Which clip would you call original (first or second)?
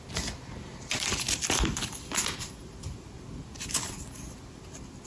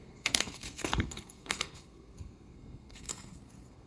first